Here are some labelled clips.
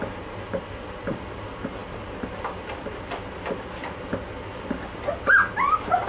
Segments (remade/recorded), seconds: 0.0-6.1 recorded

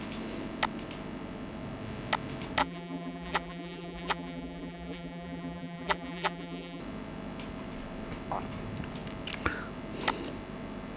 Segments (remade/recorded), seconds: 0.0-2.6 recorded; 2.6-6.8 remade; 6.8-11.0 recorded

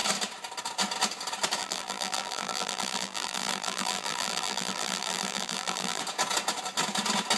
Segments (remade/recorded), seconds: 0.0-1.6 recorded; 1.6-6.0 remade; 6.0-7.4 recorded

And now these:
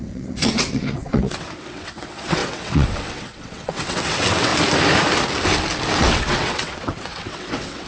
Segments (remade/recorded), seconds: 0.0-4.5 remade; 4.5-5.9 recorded; 5.9-7.9 remade

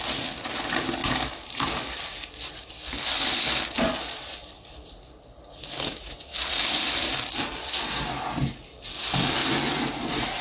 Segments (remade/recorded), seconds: 0.0-10.4 recorded

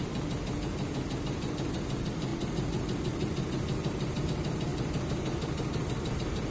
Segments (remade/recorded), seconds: 0.0-6.5 recorded

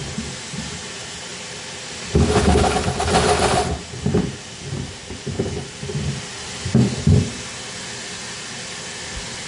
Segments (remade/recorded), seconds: 0.0-9.5 recorded

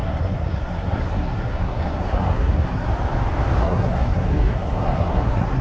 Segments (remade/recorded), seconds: 0.0-2.9 remade; 2.9-3.6 recorded; 3.6-5.6 remade